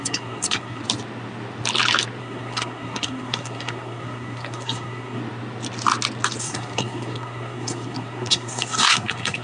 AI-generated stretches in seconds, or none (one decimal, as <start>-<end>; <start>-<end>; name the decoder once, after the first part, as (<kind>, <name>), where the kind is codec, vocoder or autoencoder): 0.0-0.8 (codec, SNAC); 2.2-5.2; 6.4-9.4